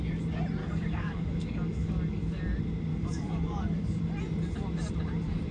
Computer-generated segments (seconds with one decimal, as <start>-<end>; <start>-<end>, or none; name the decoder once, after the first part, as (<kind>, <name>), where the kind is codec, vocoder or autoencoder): 0.6-2.4 (codec, DAC); 2.9-4.0